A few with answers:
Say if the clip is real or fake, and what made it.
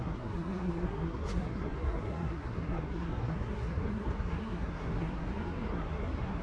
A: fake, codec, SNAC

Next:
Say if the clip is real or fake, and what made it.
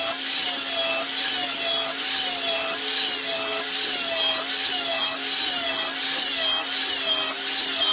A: real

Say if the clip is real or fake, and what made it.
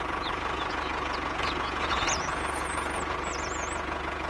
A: fake, vocoder, Vocos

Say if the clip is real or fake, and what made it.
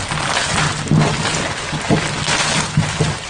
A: real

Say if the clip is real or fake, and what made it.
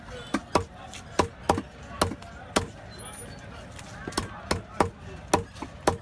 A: real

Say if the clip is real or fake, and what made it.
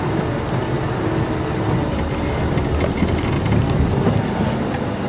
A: real